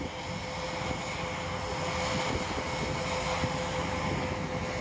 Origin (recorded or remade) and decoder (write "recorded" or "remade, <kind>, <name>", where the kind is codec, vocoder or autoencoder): recorded